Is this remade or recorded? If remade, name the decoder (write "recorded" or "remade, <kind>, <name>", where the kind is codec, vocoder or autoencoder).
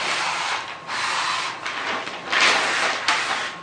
recorded